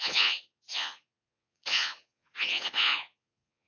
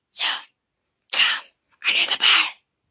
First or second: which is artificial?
first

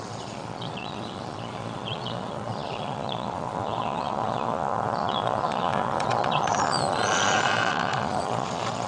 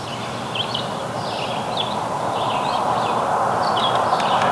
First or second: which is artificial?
first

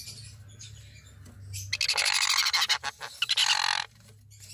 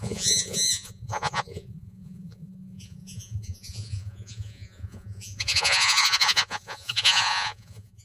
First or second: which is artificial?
second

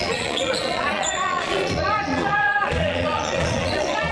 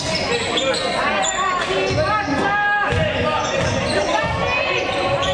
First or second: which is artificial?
first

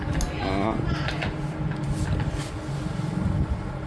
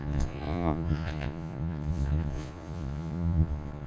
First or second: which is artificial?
second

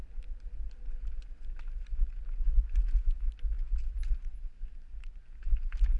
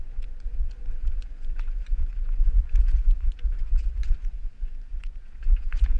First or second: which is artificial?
second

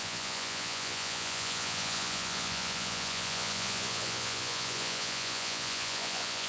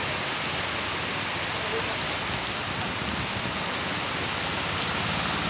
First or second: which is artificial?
first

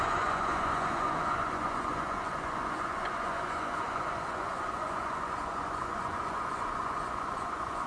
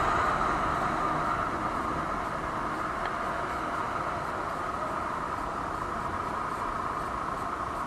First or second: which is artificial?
first